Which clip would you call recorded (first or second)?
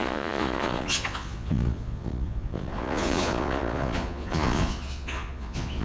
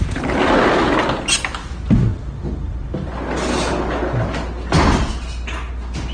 second